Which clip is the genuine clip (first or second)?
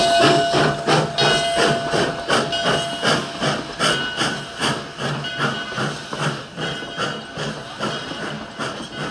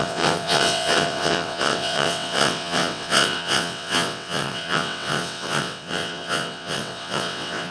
first